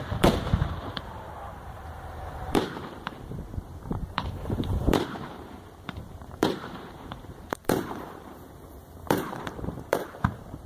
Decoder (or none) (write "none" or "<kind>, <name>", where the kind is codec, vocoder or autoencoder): vocoder, BigVGAN v2